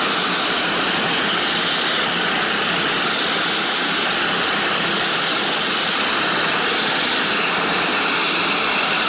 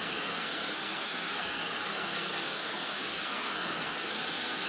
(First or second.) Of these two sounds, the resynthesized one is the second